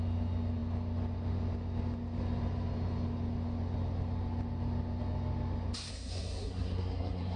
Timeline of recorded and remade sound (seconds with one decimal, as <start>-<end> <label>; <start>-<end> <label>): 0.0-5.9 recorded; 5.9-7.4 remade